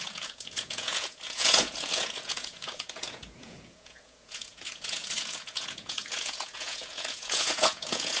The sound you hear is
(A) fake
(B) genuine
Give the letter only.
A